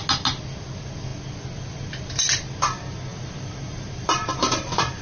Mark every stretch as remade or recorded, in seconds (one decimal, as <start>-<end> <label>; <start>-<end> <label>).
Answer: 0.0-3.1 recorded; 3.1-5.0 remade